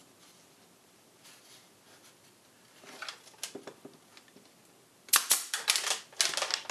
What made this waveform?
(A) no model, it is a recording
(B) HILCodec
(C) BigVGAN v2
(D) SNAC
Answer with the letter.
A